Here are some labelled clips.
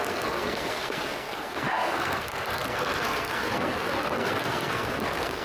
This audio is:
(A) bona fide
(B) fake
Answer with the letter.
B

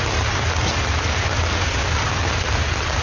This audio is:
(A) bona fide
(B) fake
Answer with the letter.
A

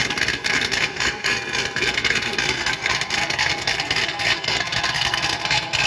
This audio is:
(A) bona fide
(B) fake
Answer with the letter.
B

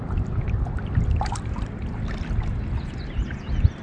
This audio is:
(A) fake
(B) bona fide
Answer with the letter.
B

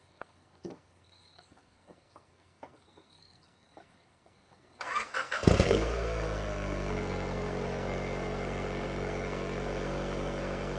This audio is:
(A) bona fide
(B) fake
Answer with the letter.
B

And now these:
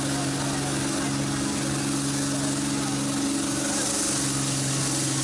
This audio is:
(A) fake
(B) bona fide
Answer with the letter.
B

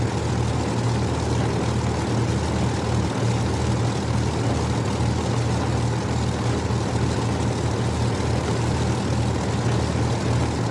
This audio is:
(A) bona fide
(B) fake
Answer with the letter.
A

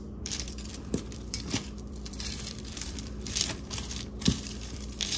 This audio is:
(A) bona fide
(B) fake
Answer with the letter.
B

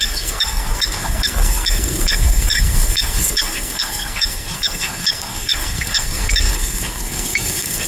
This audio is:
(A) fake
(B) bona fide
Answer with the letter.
A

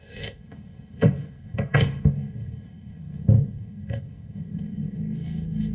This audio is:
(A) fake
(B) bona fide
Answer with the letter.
A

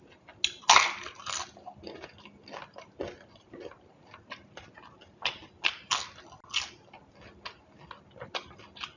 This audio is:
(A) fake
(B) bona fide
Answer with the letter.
B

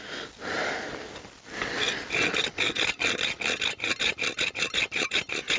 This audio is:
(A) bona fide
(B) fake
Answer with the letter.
A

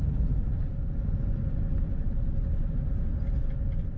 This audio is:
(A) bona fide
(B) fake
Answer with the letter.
A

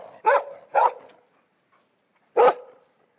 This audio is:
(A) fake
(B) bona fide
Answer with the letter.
B